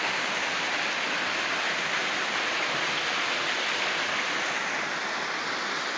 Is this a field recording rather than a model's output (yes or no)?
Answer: yes